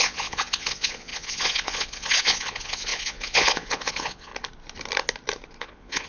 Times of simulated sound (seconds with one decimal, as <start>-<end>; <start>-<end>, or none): 0.0-4.3; 5.6-6.1